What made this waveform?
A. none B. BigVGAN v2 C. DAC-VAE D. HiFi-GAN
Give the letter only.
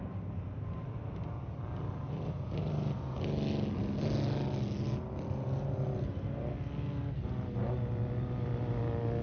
A